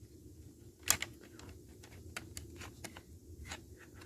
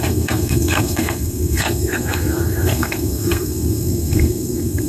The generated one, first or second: second